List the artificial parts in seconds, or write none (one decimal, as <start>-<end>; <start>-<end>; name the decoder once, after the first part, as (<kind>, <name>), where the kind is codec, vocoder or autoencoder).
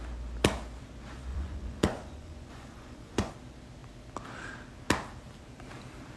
1.3-3.3 (vocoder, Vocos)